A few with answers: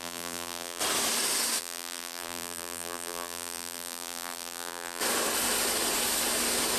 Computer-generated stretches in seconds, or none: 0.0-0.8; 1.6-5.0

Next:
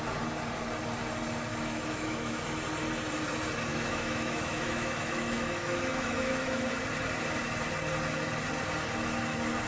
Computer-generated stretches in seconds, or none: 1.5-2.4; 3.7-6.7

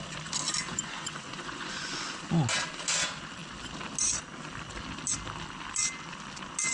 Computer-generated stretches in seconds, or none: 0.7-2.0

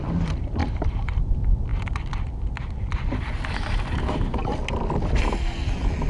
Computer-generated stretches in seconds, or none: 0.6-1.2